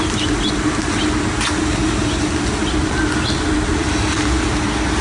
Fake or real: real